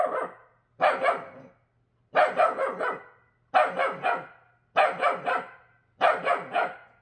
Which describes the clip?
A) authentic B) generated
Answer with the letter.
A